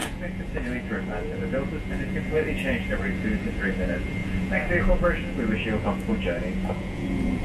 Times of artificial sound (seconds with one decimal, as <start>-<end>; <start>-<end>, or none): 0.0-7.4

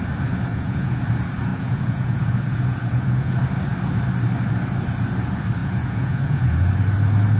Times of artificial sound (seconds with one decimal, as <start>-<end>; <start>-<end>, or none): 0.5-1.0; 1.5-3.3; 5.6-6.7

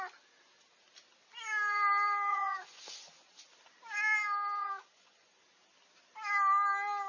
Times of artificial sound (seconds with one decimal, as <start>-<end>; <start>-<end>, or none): 2.3-3.4; 4.6-5.4